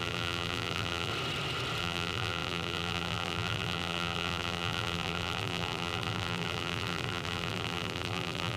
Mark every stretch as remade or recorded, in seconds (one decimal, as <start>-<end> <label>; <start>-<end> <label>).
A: 0.0-1.1 remade; 1.1-1.8 recorded; 1.8-8.6 remade